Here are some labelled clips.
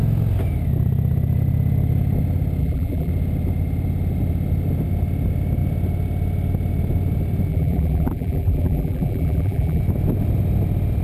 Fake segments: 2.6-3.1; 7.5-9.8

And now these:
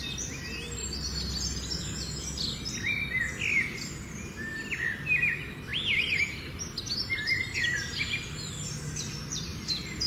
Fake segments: 9.5-10.1

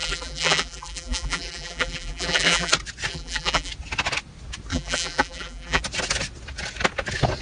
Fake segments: 0.0-2.7; 3.1-3.7; 4.7-5.8

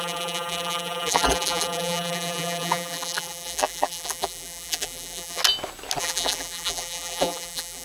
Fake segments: 0.0-5.4; 6.0-7.8

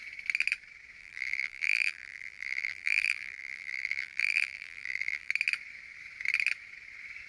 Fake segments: 1.0-5.3

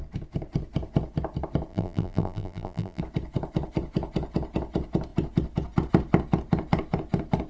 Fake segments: 1.7-3.0